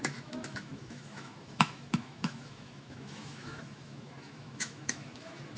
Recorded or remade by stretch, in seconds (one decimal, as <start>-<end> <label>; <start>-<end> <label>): 0.0-5.6 remade